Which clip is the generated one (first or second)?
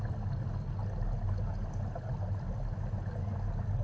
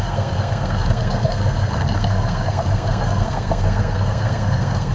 second